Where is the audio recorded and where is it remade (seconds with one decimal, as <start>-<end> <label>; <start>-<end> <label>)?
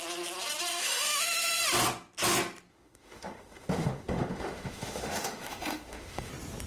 0.0-0.7 recorded; 0.7-1.6 remade; 1.6-2.7 recorded; 2.7-6.3 remade; 6.3-6.7 recorded